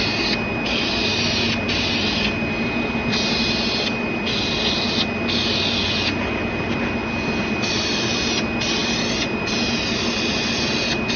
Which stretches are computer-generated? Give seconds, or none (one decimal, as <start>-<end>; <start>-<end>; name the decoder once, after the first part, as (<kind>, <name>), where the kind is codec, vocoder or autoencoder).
none